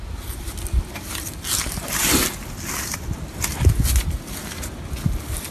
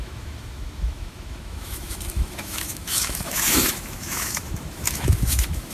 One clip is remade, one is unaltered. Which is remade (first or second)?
second